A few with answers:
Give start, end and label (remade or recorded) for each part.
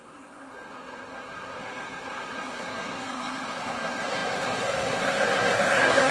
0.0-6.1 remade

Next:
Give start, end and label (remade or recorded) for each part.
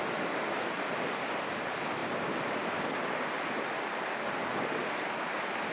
0.0-5.7 recorded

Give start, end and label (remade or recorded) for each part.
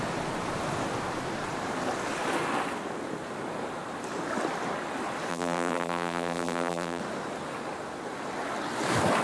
0.0-5.3 recorded; 5.3-7.0 remade; 7.0-9.2 recorded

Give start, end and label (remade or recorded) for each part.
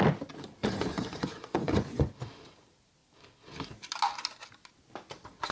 0.0-0.6 recorded; 0.6-2.1 remade; 2.1-5.5 recorded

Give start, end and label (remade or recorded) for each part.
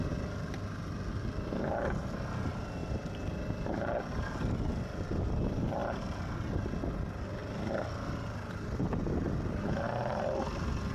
0.0-10.9 recorded